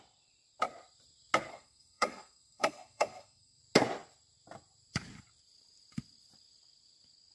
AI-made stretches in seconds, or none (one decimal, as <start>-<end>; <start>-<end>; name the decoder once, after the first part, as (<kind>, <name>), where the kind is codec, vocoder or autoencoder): 1.5-3.6 (codec, SNAC)